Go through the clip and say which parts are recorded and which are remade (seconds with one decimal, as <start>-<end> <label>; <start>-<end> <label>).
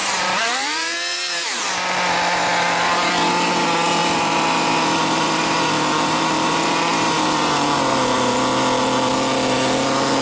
0.0-1.7 remade; 1.7-4.0 recorded; 4.0-8.3 remade; 8.3-10.2 recorded